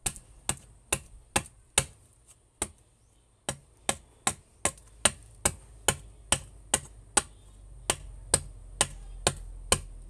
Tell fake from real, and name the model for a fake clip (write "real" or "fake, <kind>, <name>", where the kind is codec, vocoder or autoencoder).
real